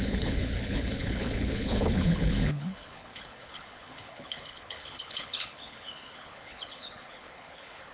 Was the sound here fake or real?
fake